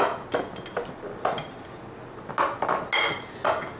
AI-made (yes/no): no